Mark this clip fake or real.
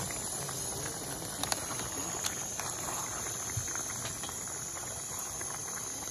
real